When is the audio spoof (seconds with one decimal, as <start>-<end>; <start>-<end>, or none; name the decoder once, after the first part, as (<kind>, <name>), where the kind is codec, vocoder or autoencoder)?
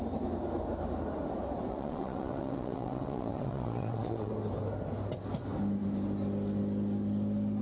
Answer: 1.7-4.3 (vocoder, WaveNeXt)